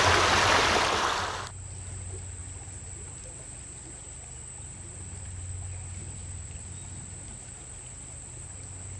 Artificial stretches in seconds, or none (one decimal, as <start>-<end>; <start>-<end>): 5.9-7.3